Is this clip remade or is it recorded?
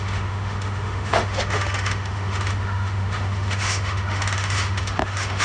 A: remade